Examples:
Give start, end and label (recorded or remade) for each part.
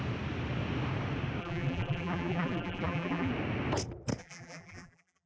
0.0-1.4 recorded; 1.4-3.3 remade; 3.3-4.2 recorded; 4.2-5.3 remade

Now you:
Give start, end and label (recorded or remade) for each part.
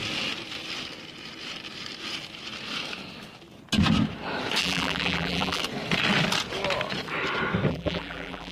0.0-4.6 recorded; 4.6-5.6 remade; 5.6-7.7 recorded; 7.7-8.5 remade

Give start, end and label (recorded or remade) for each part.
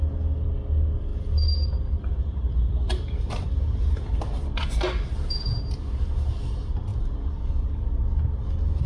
0.0-1.1 recorded; 1.1-4.2 remade; 4.2-6.9 recorded; 6.9-7.9 remade; 7.9-8.9 recorded